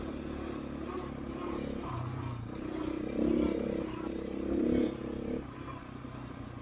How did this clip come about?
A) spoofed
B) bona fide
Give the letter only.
B